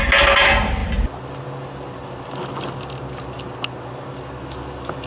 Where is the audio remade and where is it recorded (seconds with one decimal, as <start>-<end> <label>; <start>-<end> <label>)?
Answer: 0.0-5.1 recorded